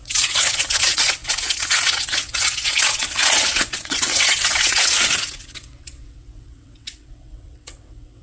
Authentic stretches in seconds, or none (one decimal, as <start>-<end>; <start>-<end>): none